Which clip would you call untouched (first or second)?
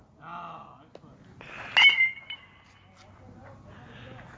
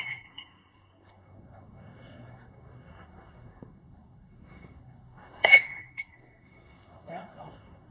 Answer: first